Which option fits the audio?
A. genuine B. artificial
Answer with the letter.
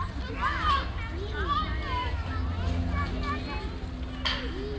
A